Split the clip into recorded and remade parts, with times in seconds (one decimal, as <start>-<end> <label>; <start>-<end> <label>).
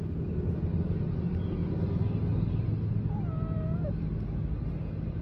0.0-5.2 recorded